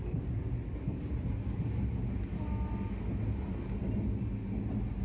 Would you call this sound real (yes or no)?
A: yes